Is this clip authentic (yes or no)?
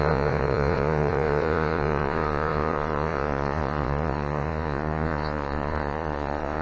no